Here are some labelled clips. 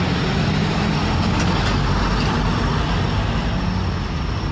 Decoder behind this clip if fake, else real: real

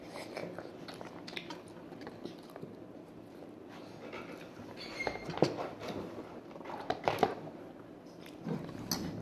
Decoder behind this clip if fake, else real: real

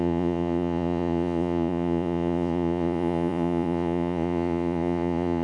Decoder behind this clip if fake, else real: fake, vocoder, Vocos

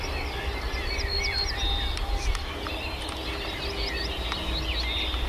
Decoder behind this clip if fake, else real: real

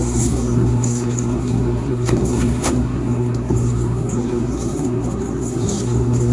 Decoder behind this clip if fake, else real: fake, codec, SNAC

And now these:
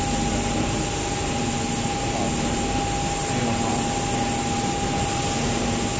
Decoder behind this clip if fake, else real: real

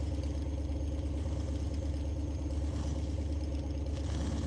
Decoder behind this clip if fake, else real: real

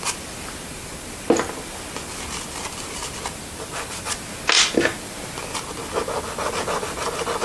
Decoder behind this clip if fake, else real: real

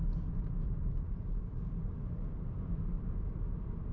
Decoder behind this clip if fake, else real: real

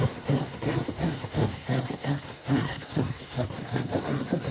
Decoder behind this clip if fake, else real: fake, codec, SNAC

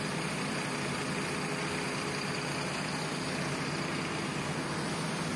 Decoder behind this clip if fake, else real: real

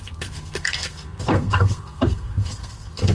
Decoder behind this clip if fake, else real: fake, codec, SNAC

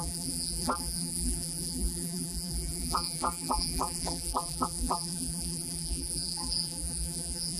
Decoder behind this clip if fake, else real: fake, vocoder, BigVGAN v2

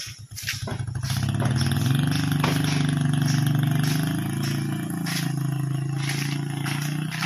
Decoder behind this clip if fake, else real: real